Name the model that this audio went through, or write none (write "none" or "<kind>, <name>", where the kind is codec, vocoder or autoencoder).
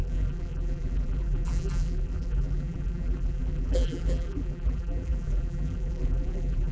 vocoder, BigVGAN v2